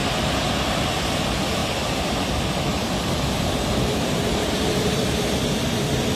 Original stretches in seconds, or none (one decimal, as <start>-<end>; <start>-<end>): 0.0-1.6; 2.1-2.7; 5.0-6.2